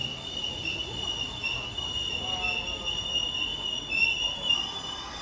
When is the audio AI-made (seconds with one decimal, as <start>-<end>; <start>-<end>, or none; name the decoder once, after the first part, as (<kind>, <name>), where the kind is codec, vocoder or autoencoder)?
none